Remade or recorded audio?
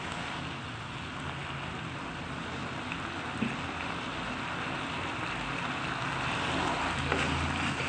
recorded